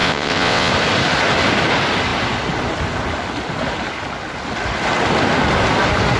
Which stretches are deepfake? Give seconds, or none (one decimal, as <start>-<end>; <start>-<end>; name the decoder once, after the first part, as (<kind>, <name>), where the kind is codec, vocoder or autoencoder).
0.0-0.7 (vocoder, WaveNeXt)